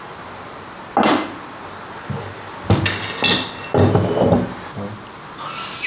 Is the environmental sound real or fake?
real